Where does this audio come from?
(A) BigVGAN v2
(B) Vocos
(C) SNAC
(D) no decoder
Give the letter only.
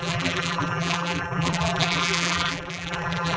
A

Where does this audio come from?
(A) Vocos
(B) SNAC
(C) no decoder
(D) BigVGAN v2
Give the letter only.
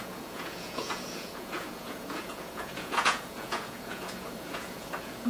A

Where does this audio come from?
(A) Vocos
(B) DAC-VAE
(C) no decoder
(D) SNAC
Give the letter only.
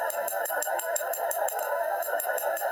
D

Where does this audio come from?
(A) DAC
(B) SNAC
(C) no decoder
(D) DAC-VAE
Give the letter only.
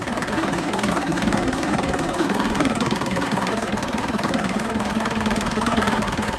B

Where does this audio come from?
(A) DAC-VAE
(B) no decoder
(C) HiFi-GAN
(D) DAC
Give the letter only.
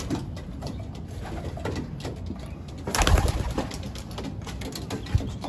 B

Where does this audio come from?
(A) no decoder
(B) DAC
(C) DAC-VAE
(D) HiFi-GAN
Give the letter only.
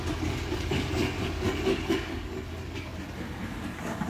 B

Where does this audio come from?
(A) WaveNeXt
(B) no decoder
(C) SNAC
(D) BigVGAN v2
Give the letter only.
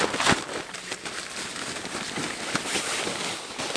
B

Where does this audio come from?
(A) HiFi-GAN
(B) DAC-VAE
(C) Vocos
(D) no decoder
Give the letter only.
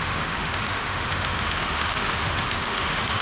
B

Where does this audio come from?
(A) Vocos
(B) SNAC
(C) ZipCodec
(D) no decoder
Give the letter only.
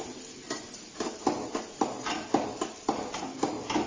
D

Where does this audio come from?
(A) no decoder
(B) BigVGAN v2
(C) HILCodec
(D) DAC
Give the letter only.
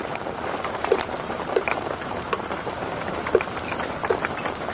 B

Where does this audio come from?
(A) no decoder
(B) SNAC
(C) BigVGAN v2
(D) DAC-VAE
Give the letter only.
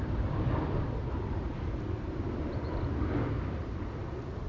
C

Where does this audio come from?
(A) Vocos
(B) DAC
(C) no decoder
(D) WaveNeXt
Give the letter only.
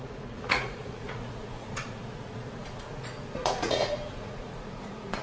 A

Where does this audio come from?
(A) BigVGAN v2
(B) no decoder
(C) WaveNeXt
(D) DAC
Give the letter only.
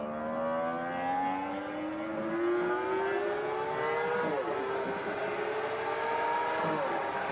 B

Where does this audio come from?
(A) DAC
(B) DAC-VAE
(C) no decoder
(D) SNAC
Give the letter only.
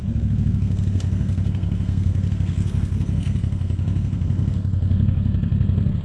D